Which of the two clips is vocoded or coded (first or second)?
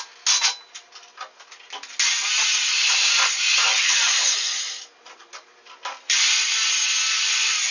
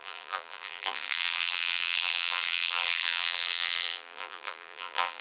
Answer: second